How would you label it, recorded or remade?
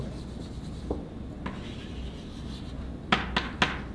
recorded